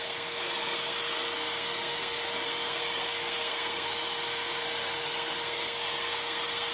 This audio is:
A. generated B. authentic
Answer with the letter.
A